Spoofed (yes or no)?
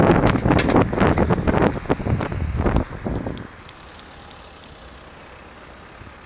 no